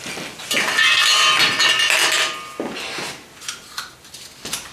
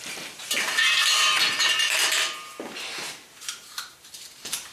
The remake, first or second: second